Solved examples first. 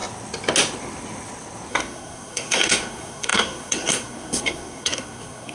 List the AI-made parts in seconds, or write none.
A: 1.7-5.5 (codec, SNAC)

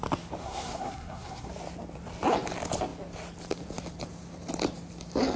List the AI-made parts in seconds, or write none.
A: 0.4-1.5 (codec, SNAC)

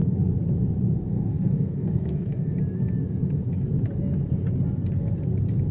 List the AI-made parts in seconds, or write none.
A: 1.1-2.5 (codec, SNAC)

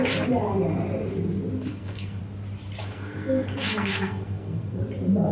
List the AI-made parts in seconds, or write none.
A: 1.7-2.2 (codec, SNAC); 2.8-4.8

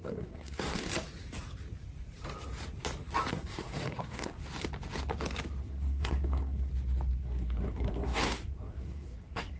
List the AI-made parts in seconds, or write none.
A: 0.0-0.9 (codec, SNAC); 3.3-4.4; 5.6-6.7; 7.2-9.6

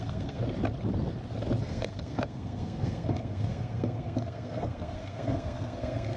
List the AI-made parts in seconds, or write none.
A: 0.0-0.4 (codec, SNAC); 1.6-6.2

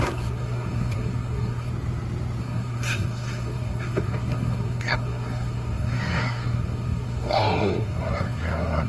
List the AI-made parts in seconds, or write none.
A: 0.0-1.7 (codec, SNAC); 2.4-8.9

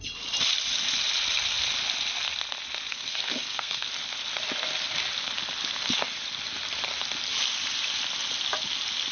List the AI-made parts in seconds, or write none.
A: 2.9-3.9 (codec, SNAC)